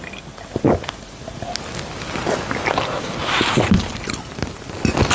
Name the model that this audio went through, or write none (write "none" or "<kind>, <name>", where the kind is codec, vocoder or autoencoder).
none